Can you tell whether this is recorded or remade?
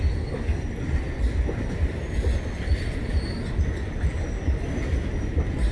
recorded